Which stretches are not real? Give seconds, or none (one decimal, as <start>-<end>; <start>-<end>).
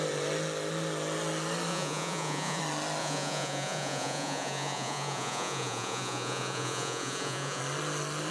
1.7-2.6; 3.0-7.6